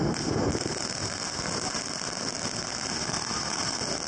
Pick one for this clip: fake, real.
real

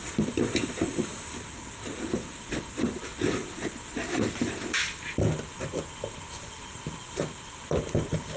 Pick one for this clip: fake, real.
real